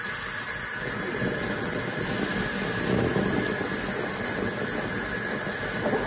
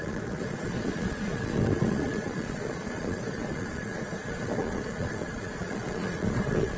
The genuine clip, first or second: first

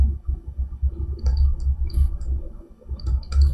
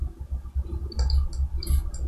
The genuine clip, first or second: second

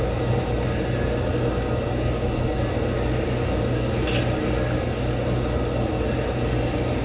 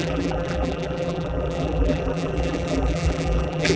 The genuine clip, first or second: first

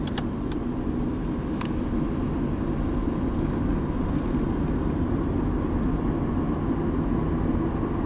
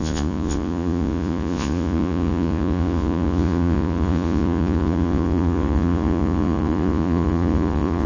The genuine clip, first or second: first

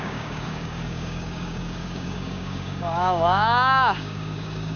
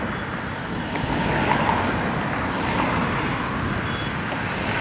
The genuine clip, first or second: second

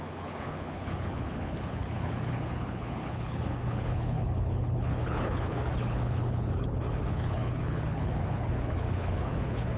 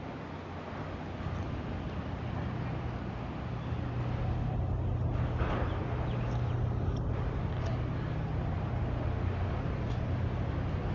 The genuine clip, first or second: second